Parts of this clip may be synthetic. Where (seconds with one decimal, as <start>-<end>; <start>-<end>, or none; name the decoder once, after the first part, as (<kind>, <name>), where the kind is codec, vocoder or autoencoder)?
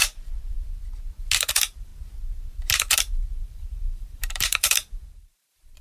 1.5-1.9 (vocoder, BigVGAN v2); 3.0-5.8